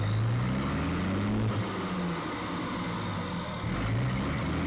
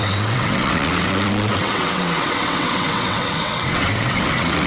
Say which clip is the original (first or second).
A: first